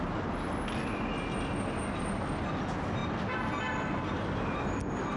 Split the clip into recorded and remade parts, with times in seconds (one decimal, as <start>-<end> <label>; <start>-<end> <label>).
0.0-5.2 recorded